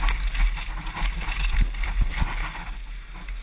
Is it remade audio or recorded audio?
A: recorded